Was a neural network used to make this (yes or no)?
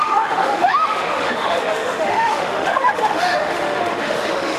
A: yes